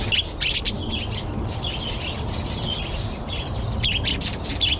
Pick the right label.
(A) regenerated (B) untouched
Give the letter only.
B